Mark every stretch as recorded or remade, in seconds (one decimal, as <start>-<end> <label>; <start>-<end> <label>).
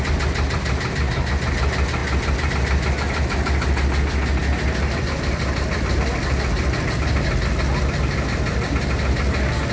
0.0-9.7 recorded